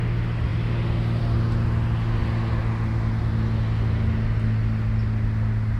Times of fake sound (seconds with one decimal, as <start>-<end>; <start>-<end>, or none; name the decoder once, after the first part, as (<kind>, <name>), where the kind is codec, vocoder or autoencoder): none